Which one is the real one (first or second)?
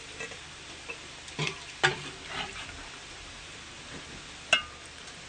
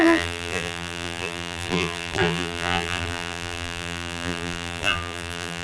first